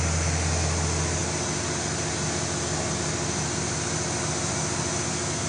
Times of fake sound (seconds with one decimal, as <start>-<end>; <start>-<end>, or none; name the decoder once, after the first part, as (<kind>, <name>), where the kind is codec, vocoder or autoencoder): none